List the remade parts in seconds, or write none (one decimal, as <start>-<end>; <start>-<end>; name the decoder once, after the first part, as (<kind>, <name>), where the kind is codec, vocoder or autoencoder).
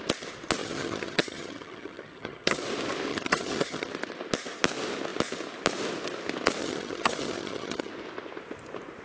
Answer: 0.6-2.6 (vocoder, HiFi-GAN); 3.1-3.9; 6.6-7.9